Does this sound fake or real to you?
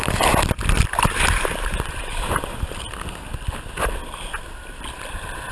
real